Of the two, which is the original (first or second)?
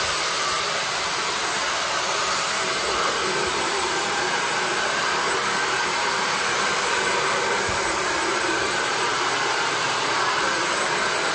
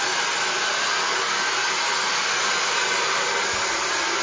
second